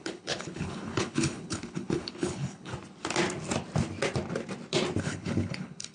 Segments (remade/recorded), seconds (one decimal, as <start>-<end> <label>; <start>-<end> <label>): 0.0-2.7 remade; 2.7-5.0 recorded; 5.0-5.9 remade